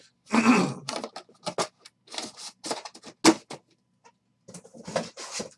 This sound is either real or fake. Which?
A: real